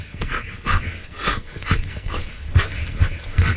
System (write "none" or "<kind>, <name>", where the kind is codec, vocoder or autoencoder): codec, SNAC